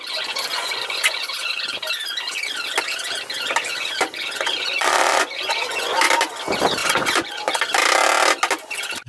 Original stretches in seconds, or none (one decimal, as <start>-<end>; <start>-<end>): 0.0-0.5; 1.5-3.7; 6.1-6.8; 7.6-9.1